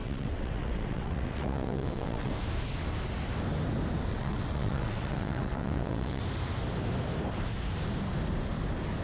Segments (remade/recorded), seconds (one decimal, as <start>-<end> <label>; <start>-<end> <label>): 0.0-2.3 remade; 2.3-4.1 recorded; 4.1-6.2 remade; 6.2-9.0 recorded